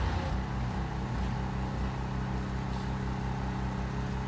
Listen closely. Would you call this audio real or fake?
real